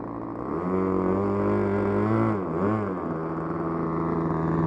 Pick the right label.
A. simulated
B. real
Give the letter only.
B